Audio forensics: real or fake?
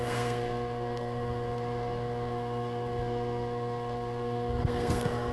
fake